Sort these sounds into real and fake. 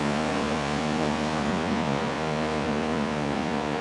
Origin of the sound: fake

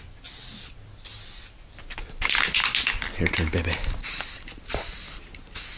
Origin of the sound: real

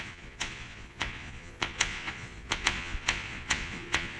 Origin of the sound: fake